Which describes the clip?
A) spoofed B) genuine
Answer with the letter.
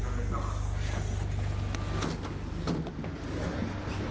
B